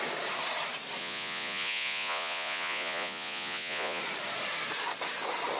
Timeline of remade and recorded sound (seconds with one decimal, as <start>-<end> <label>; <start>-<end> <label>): 0.0-1.0 recorded; 1.0-4.0 remade; 4.0-5.6 recorded